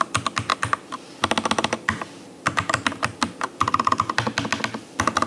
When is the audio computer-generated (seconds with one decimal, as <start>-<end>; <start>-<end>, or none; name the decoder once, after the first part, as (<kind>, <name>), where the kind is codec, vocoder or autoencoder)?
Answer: none